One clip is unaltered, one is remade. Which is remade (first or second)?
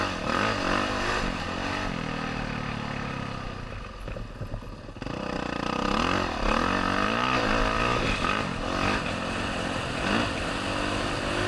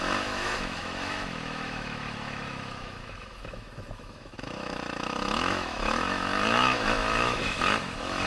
second